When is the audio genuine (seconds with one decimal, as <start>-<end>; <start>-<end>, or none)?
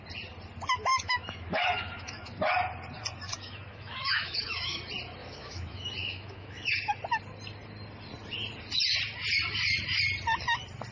0.0-0.9; 2.3-3.3; 4.8-5.2; 6.9-10.9